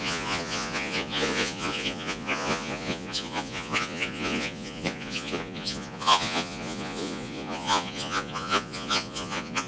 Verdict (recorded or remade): remade